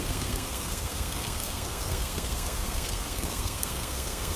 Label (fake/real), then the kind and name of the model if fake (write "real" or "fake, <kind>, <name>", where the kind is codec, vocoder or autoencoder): fake, codec, SNAC